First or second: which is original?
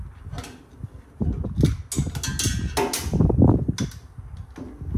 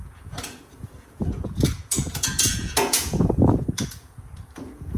first